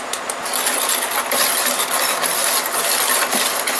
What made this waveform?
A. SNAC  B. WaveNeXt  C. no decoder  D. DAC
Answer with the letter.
C